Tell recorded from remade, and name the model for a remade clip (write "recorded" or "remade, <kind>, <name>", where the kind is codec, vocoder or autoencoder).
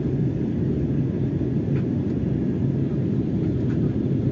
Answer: recorded